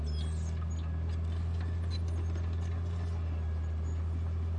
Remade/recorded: recorded